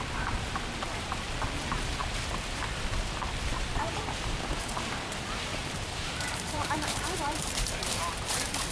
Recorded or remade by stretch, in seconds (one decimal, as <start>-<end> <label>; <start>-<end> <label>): 0.0-5.5 recorded; 5.5-8.1 remade; 8.1-8.7 recorded